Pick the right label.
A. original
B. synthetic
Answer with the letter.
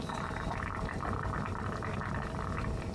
A